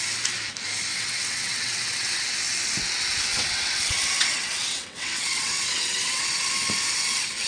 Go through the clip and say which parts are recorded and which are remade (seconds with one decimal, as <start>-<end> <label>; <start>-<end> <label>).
0.0-0.9 recorded; 0.9-2.2 remade; 2.2-3.3 recorded; 3.3-6.5 remade; 6.5-7.5 recorded